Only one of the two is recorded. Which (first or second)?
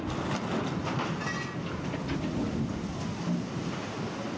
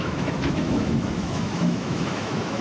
first